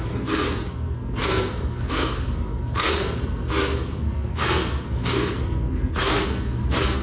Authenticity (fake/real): fake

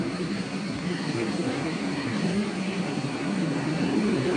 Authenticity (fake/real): fake